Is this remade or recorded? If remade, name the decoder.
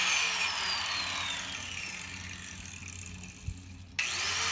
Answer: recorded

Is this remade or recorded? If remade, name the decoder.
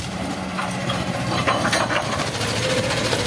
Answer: remade, vocoder, BigVGAN v2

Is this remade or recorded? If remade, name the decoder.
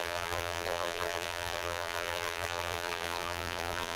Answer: remade, vocoder, BigVGAN v2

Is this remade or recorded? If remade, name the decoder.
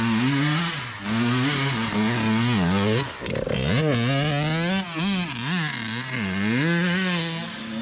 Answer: recorded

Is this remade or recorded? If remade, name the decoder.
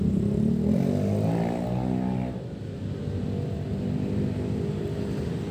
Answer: recorded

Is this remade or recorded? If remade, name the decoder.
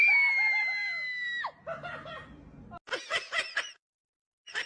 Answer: recorded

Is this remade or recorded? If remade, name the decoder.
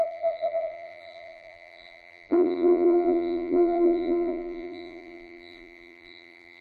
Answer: remade, vocoder, BigVGAN v2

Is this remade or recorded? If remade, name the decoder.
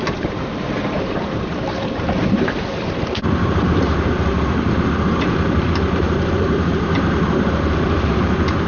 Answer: remade, vocoder, BigVGAN v2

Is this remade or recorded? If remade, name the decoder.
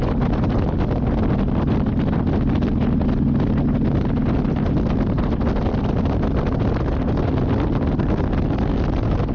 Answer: recorded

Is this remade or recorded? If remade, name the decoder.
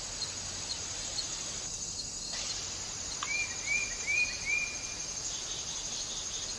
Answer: recorded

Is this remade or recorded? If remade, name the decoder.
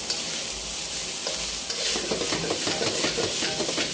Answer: recorded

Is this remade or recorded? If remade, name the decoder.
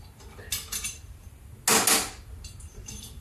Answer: recorded